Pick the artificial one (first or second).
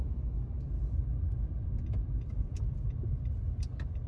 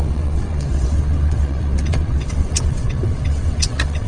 second